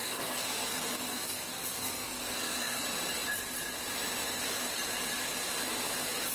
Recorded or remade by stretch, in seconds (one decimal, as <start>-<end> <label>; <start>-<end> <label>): 0.0-2.8 remade; 2.8-6.3 recorded